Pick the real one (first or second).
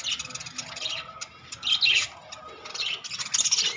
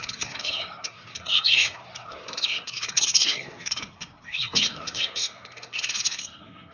first